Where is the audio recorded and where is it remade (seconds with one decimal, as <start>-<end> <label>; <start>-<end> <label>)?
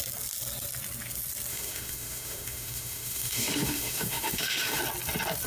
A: 0.0-1.5 recorded; 1.5-4.8 remade; 4.8-5.5 recorded